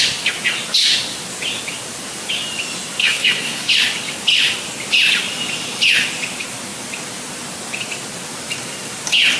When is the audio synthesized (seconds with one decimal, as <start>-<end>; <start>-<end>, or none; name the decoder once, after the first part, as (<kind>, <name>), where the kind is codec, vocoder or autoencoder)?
3.0-3.7 (codec, SNAC)